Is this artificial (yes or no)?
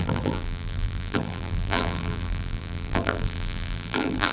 yes